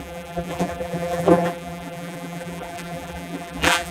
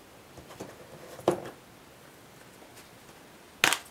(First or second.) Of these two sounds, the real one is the second